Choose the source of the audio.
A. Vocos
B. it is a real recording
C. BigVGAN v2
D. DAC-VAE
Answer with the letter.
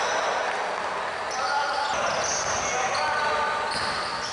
B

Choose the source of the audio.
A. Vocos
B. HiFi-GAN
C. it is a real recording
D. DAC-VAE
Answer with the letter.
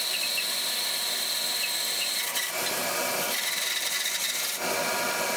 C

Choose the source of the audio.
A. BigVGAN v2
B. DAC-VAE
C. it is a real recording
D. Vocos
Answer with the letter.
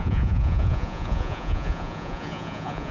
D